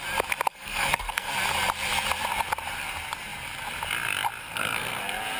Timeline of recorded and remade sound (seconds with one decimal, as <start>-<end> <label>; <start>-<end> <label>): 0.0-0.5 recorded; 0.5-1.3 remade; 1.3-4.4 recorded; 4.4-5.0 remade; 5.0-5.4 recorded